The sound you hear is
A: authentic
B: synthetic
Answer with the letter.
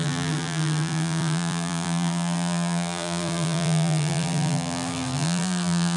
B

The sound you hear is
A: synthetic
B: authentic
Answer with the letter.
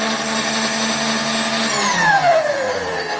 B